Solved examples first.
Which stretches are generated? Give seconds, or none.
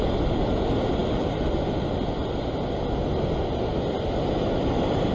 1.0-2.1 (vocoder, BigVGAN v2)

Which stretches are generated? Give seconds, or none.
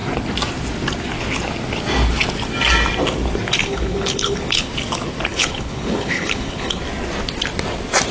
3.6-4.7 (codec, HILCodec); 5.3-6.8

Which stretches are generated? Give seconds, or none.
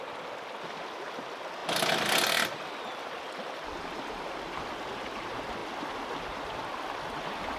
none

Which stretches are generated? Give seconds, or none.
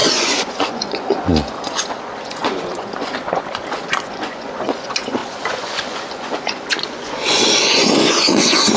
0.0-8.8 (vocoder, Vocos)